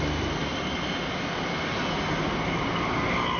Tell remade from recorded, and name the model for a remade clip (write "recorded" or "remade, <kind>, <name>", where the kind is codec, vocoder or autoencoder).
recorded